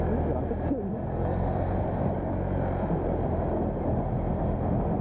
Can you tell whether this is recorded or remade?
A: recorded